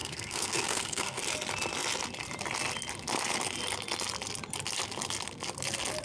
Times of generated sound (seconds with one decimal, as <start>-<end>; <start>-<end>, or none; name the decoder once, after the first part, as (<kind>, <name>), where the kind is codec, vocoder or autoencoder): 0.0-1.2 (codec, SNAC)